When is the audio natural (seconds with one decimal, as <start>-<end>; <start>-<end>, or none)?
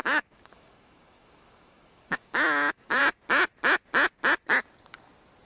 3.0-5.5